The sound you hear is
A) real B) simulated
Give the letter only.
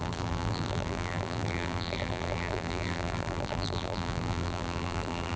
B